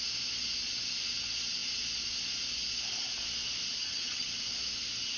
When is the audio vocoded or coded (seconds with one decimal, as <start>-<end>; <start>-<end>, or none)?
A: 3.8-4.3